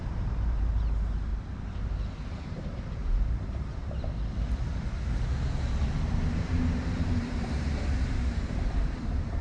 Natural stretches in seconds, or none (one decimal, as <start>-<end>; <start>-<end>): 1.3-2.3; 3.0-6.3

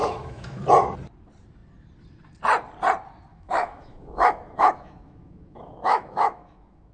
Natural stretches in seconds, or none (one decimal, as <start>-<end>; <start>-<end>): 0.6-3.3